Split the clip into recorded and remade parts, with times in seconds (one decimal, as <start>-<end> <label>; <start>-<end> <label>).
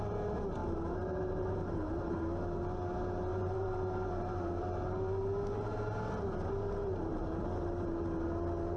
0.0-0.6 recorded; 0.6-2.2 remade; 2.2-3.3 recorded; 3.3-4.6 remade; 4.6-6.8 recorded; 6.8-7.4 remade; 7.4-8.8 recorded